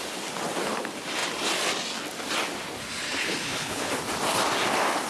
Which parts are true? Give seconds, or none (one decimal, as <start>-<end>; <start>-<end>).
0.0-3.2; 3.9-5.1